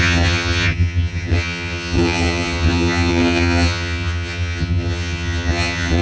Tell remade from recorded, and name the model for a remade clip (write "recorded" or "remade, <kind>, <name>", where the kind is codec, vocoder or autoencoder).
remade, vocoder, HiFi-GAN